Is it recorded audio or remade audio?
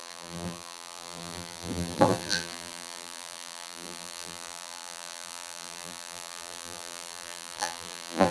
remade